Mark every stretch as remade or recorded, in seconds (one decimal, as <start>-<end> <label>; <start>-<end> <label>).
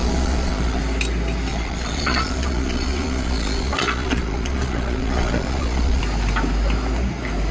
0.0-0.8 remade; 0.8-1.5 recorded; 1.5-6.0 remade; 6.0-7.5 recorded